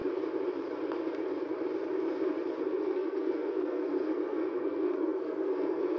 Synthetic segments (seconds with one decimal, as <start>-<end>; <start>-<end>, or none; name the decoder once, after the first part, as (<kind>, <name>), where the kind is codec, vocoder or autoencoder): 2.6-6.0 (codec, SNAC)